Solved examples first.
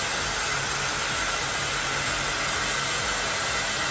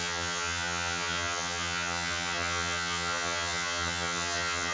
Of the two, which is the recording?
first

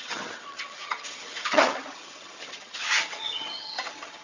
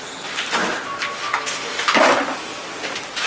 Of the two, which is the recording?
second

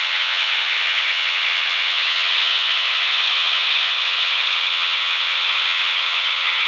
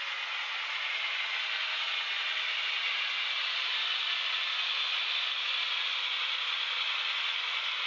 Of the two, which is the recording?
second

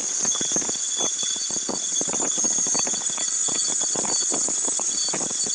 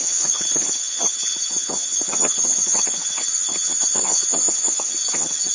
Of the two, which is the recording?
first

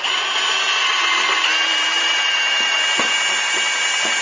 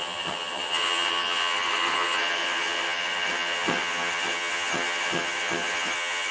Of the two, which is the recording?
first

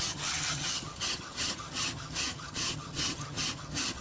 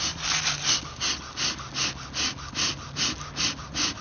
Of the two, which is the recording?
second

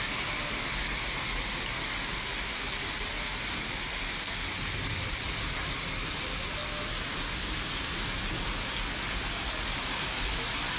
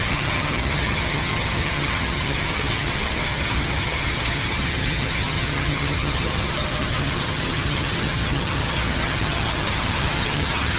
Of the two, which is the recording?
first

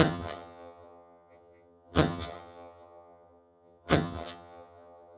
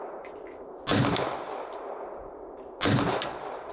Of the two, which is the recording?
second